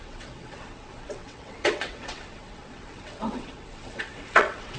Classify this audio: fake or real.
fake